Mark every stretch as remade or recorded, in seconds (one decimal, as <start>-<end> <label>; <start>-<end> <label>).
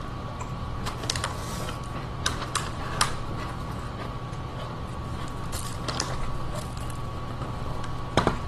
0.0-8.5 recorded